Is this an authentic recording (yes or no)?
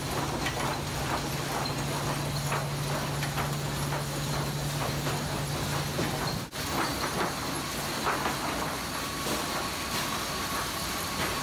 yes